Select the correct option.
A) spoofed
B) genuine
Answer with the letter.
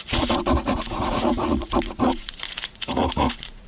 A